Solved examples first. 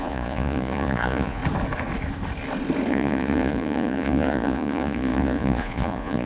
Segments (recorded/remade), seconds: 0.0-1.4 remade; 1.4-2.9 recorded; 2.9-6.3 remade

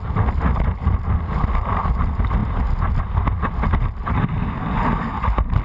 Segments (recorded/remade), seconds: 0.0-5.6 recorded

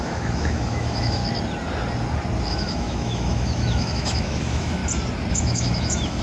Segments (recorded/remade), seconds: 0.0-1.2 remade; 1.2-2.5 recorded; 2.5-4.8 remade; 4.8-5.3 recorded; 5.3-6.2 remade

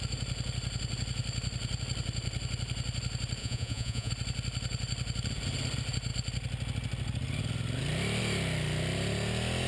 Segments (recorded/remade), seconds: 0.0-3.4 recorded; 3.4-4.1 remade; 4.1-9.7 recorded

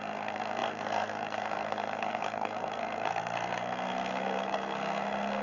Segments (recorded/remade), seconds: 0.0-5.4 remade